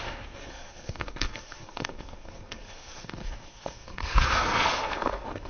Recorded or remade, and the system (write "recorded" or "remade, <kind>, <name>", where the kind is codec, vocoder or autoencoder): remade, codec, SNAC